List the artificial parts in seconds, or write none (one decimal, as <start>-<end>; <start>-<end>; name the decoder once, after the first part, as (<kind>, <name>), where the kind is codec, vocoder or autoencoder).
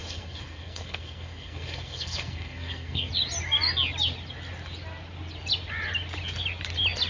0.0-3.1 (codec, SNAC)